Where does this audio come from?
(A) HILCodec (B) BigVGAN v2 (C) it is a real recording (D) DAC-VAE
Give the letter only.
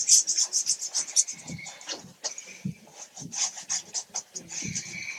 C